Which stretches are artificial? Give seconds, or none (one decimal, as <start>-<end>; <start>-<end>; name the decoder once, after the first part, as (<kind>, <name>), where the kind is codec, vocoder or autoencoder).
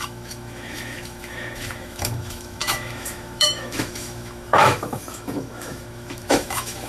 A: 0.0-6.9 (autoencoder, DAC-VAE)